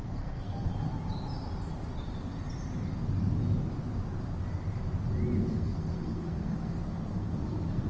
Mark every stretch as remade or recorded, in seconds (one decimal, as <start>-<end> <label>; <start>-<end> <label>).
0.0-0.7 remade; 0.7-5.4 recorded; 5.4-7.9 remade